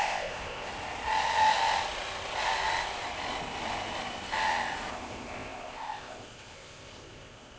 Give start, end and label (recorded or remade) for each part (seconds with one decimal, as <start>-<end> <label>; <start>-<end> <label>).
0.0-0.7 remade; 0.7-4.9 recorded; 4.9-7.6 remade